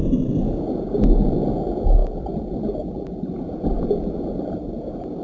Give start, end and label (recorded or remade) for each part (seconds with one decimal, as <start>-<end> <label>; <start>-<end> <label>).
0.0-5.2 recorded